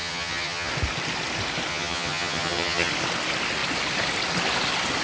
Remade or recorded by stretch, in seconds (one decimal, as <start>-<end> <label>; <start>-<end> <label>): 0.0-0.7 remade; 0.7-1.7 recorded; 1.7-2.9 remade; 2.9-5.0 recorded